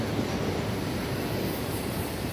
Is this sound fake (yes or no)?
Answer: no